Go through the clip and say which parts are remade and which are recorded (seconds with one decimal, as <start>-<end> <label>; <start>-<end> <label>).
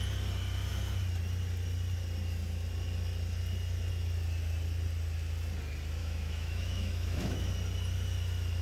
0.0-6.0 recorded; 6.0-7.5 remade; 7.5-8.6 recorded